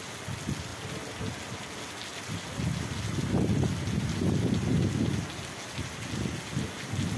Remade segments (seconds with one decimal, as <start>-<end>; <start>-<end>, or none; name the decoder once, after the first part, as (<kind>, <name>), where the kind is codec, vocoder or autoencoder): none